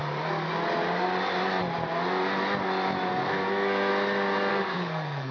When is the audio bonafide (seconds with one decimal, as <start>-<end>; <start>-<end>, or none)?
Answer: 0.0-3.1; 3.9-4.5